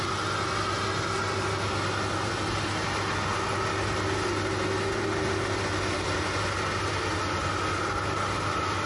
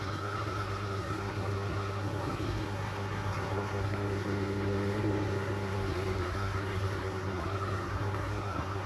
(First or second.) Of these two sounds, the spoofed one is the second